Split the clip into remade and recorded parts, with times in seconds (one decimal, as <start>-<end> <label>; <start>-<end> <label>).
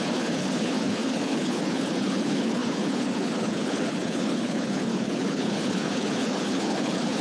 0.0-7.2 remade